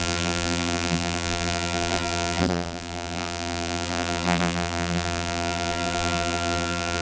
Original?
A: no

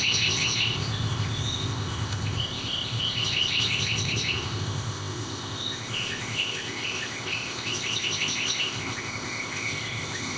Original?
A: no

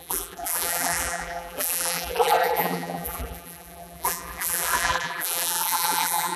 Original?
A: no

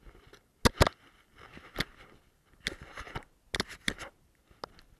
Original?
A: yes